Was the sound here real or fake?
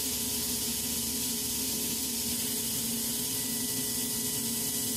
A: real